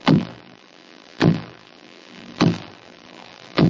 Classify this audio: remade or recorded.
remade